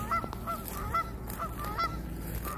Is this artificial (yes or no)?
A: no